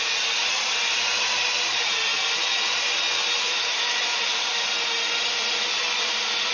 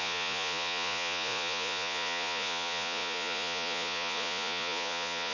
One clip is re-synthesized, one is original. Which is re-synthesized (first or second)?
second